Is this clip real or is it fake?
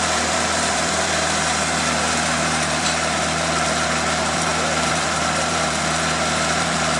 fake